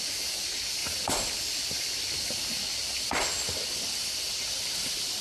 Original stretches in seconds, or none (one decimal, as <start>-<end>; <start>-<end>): 0.0-5.2